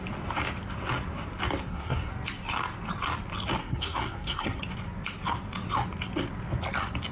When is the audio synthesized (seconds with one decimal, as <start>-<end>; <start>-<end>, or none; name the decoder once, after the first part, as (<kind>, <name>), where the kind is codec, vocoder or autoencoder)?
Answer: 1.6-2.1 (codec, SNAC); 3.6-4.6